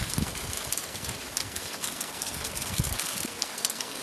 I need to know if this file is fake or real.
fake